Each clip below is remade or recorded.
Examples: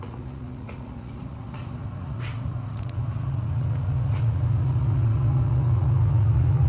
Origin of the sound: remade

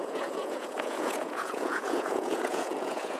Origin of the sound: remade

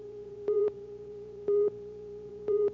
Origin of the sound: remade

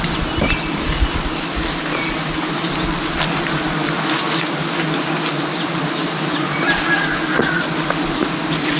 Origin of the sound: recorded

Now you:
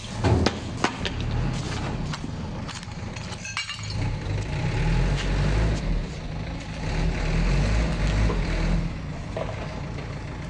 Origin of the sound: recorded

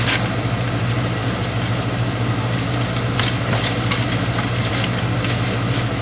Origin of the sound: recorded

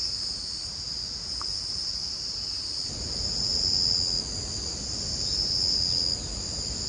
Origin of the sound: recorded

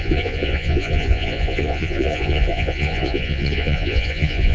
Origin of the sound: remade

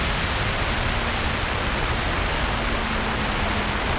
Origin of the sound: recorded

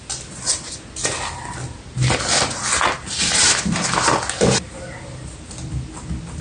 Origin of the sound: recorded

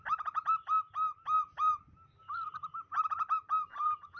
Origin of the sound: recorded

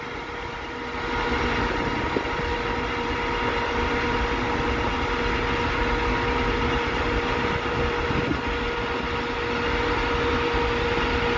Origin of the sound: recorded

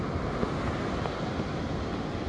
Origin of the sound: recorded